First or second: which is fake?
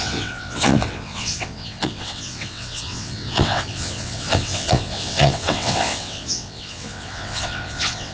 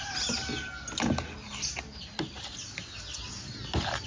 first